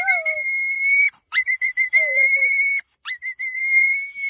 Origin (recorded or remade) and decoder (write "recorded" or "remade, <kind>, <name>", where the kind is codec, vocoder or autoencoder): remade, vocoder, BigVGAN v2